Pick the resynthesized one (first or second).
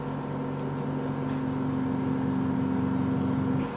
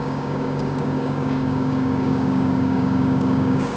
second